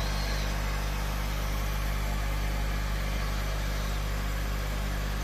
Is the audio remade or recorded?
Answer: recorded